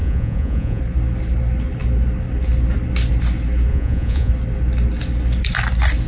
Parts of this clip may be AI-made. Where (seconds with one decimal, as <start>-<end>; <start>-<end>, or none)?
0.0-0.8; 3.7-4.3